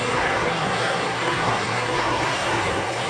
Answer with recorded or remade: remade